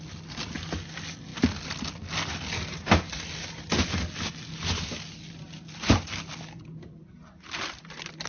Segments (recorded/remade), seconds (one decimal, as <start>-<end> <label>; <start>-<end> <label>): 0.0-8.3 recorded